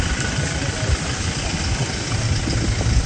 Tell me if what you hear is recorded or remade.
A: recorded